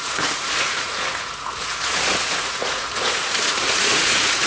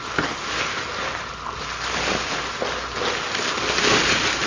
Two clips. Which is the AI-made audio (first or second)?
first